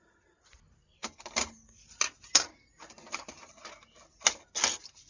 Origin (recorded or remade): recorded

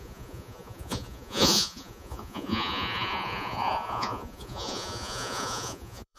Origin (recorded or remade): remade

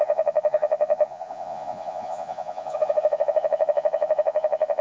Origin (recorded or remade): remade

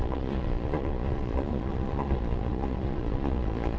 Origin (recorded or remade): remade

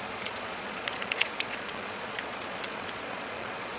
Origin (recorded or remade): remade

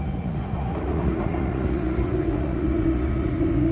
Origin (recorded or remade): remade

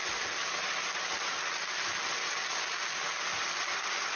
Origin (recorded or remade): recorded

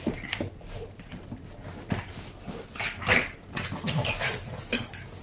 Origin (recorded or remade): recorded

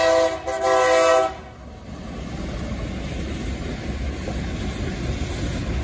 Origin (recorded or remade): recorded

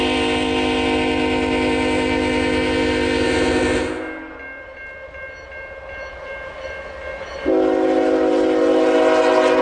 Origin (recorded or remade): recorded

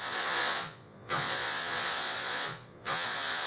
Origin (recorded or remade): remade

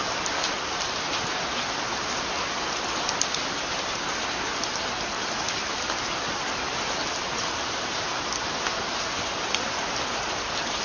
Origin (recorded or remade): recorded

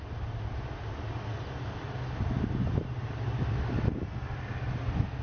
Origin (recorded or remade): recorded